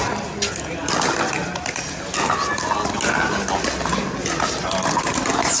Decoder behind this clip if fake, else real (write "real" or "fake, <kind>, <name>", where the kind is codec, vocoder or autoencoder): real